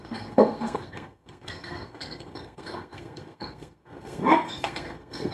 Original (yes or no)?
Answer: no